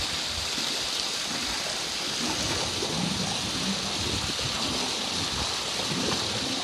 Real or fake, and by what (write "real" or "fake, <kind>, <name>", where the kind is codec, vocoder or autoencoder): real